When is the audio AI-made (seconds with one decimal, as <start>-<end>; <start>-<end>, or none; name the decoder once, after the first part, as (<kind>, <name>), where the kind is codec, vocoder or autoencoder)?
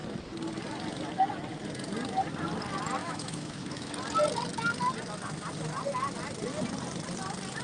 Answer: 3.0-3.9 (autoencoder, DAC-VAE)